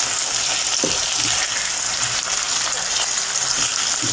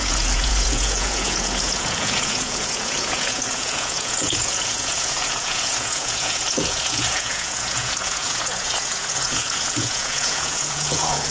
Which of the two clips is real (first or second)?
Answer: first